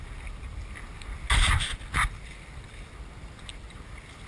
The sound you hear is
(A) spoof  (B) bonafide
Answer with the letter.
B